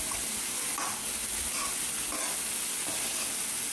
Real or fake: real